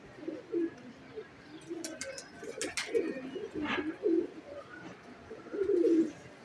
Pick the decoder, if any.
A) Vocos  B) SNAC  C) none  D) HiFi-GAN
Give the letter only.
C